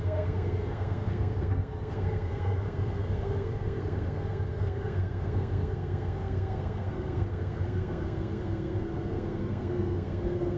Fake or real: fake